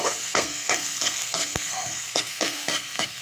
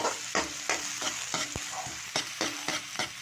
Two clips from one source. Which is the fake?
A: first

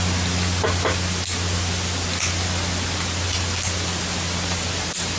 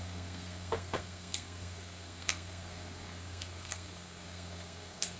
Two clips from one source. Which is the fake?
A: second